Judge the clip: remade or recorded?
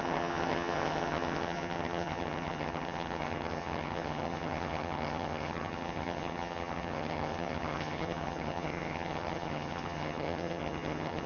remade